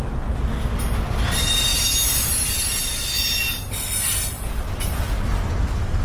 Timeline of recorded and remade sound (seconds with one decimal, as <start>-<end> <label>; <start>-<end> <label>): 0.0-6.0 recorded